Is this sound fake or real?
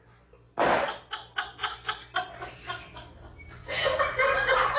real